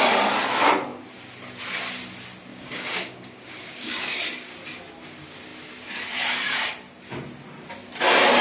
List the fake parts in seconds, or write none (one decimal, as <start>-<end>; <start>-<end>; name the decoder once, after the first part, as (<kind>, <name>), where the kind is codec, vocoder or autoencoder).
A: 2.5-4.2 (codec, DAC)